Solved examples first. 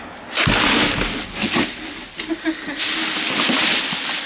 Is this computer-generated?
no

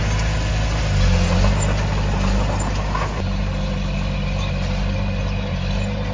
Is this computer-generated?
no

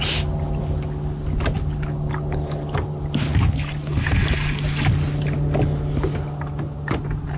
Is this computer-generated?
no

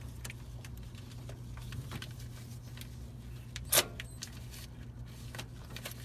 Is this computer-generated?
no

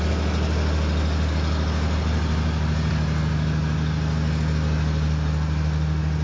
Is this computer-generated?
no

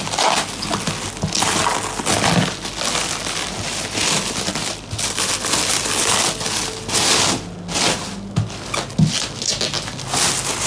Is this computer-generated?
no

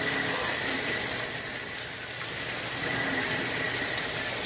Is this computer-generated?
yes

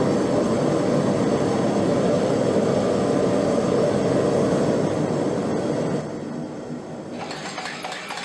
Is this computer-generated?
no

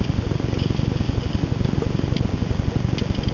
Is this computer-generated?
no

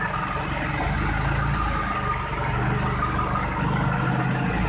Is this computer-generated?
no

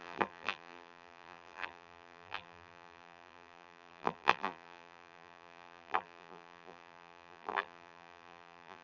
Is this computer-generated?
yes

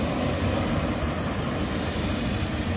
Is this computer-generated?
no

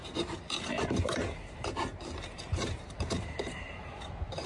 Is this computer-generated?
yes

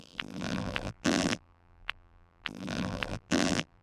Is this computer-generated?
yes